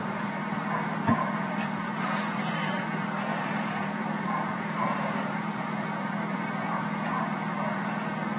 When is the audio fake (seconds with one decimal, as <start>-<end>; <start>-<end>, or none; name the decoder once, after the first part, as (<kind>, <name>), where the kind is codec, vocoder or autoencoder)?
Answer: 0.0-0.4 (vocoder, Vocos); 1.0-8.4